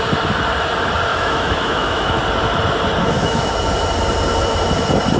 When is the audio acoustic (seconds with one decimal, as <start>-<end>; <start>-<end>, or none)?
0.0-1.1; 2.2-3.0; 3.5-5.2